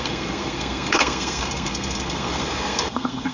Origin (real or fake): fake